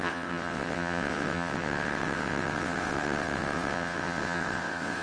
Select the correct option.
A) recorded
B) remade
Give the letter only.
B